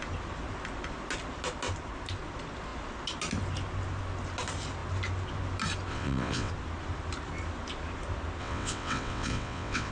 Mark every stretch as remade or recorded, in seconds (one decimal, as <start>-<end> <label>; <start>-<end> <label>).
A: 0.0-5.9 recorded; 5.9-6.5 remade; 6.5-8.4 recorded; 8.4-9.9 remade